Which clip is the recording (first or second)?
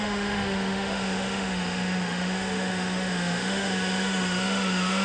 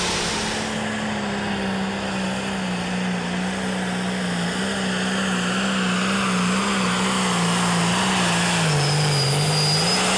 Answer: second